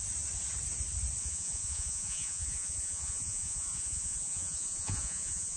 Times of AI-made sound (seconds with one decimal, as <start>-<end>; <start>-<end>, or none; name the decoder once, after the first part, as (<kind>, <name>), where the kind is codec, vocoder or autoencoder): 1.2-5.6 (vocoder, Vocos)